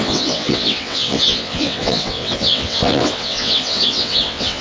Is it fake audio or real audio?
fake